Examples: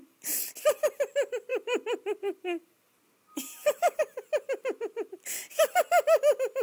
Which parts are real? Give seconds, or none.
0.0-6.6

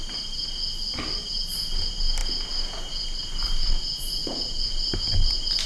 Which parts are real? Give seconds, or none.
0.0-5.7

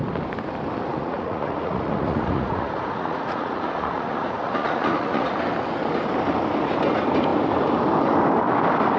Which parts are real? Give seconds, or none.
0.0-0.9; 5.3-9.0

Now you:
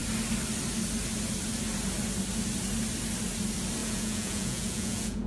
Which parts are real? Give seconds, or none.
0.0-3.8